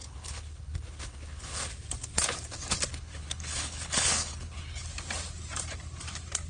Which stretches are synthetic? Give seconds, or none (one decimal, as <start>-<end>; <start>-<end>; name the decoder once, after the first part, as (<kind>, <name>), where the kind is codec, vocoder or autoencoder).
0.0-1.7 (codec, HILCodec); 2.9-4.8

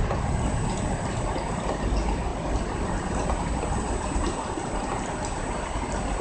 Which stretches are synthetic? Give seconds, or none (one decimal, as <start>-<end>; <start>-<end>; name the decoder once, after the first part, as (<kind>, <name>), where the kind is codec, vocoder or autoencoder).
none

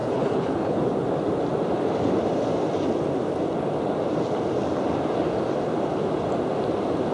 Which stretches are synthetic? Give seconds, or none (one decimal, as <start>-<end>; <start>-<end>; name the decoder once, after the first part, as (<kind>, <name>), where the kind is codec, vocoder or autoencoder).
0.0-0.8 (codec, HILCodec)

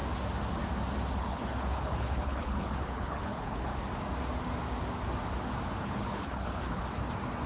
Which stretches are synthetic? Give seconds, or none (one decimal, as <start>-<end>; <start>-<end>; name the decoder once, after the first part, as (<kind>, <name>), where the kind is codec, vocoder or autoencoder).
1.2-3.7 (codec, HILCodec); 5.8-6.8

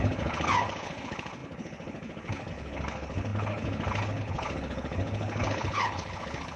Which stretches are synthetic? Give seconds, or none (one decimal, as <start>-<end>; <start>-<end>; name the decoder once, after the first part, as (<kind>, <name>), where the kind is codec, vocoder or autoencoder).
0.0-6.6 (codec, HILCodec)

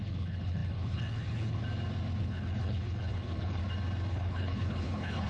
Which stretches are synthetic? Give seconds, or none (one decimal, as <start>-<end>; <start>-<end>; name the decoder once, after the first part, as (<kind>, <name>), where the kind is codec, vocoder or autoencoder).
0.0-1.6 (codec, HILCodec); 2.2-3.6; 4.1-5.3